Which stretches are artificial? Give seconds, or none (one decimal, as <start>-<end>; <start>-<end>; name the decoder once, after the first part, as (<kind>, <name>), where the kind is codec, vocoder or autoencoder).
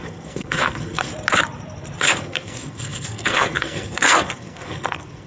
0.0-1.1 (codec, SNAC); 2.0-5.3